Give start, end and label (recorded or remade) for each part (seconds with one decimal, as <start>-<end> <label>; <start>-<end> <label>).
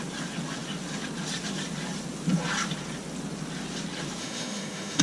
0.0-4.2 recorded; 4.2-5.0 remade